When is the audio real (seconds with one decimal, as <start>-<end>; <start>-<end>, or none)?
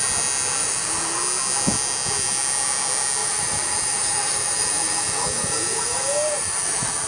0.0-0.6; 1.2-3.2